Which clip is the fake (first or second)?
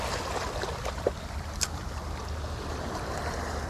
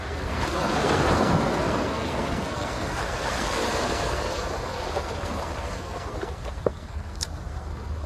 second